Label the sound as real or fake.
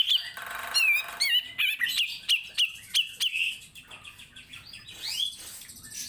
real